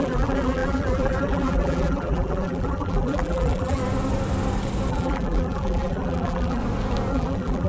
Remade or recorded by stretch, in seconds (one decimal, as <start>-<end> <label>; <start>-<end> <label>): 0.0-3.8 remade; 3.8-4.9 recorded; 4.9-6.6 remade; 6.6-7.1 recorded; 7.1-7.7 remade